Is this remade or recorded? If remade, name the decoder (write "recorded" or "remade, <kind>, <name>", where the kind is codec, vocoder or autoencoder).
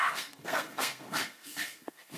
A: remade, codec, SNAC